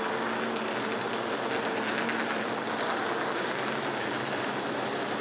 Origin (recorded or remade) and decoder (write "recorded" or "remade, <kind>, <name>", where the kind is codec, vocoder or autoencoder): recorded